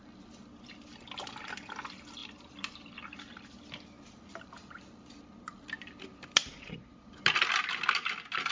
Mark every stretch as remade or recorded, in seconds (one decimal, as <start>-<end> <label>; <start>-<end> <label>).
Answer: 0.0-6.4 recorded; 6.4-7.1 remade; 7.1-8.5 recorded